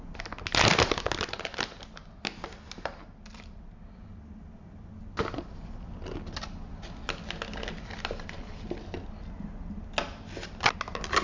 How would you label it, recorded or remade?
recorded